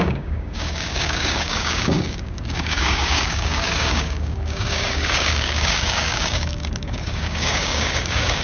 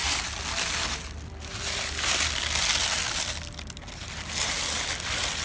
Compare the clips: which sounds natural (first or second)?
second